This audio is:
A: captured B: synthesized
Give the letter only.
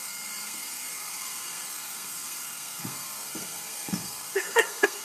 B